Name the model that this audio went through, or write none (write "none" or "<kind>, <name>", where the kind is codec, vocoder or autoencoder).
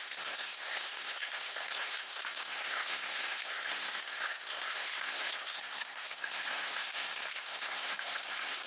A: codec, SNAC